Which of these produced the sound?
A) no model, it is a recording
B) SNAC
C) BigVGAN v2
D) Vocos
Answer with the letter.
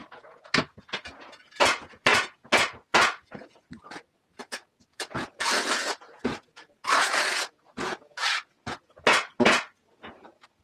D